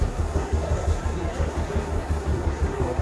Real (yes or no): no